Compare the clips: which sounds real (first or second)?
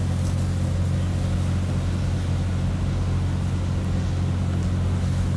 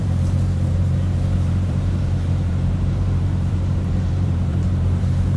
first